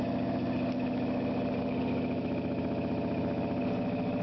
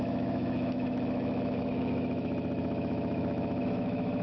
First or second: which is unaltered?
first